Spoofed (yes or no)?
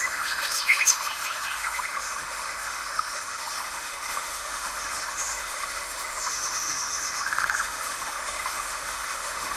yes